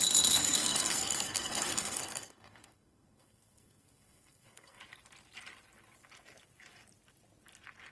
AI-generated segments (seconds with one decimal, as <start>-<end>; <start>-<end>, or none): 0.4-4.8